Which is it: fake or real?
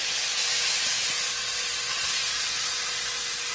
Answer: real